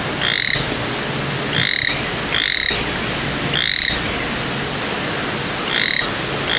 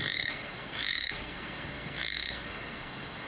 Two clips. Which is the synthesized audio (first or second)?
second